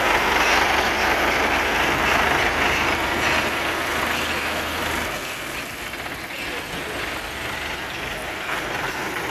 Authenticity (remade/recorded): recorded